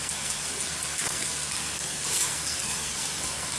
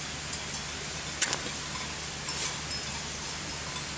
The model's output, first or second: first